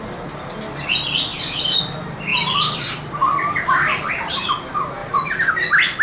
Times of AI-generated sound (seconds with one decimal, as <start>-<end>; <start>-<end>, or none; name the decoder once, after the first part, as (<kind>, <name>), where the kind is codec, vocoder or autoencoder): 1.3-1.8 (vocoder, BigVGAN v2); 2.3-4.1; 5.0-5.5